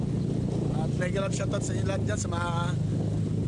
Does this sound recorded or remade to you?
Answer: recorded